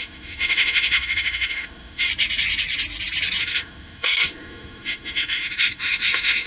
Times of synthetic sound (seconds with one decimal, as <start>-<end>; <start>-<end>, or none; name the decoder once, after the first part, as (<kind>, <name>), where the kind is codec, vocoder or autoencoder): 0.0-2.1 (autoencoder, DAC-VAE); 3.4-6.5